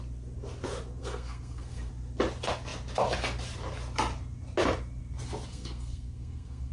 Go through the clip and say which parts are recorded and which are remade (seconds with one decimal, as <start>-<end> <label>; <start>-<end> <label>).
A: 0.0-1.0 recorded; 1.0-1.9 remade; 1.9-5.5 recorded; 5.5-6.7 remade